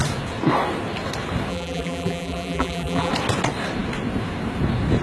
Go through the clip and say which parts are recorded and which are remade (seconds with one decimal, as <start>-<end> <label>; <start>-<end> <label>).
0.0-1.5 recorded; 1.5-3.1 remade; 3.1-5.0 recorded